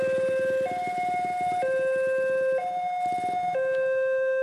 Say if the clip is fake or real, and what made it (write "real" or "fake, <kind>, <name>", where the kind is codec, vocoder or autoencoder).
real